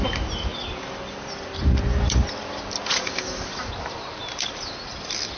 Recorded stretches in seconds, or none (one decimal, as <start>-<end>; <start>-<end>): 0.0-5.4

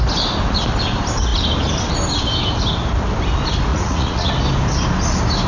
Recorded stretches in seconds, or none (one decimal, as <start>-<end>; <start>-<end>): 0.0-3.7; 4.3-5.5

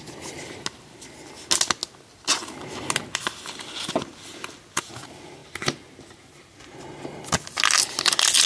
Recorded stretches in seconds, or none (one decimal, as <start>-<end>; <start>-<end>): 0.0-8.5

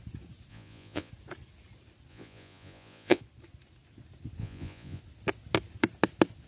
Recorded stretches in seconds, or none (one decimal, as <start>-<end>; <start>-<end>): 0.0-0.5; 1.1-2.1; 3.2-4.4; 5.0-6.5

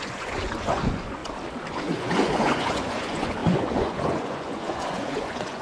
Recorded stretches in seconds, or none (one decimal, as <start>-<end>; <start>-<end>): 1.2-1.7

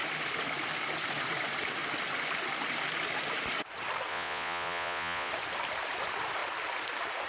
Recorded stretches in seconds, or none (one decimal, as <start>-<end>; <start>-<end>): 0.0-4.1; 5.3-7.3